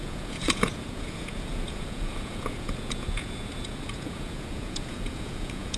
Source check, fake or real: fake